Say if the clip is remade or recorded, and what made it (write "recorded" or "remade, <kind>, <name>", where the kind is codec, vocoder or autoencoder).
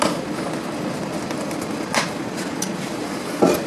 recorded